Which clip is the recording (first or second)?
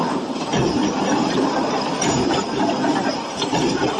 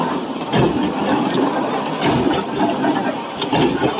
second